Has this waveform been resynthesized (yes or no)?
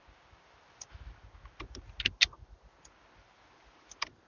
no